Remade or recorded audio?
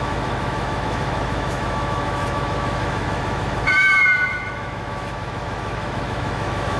remade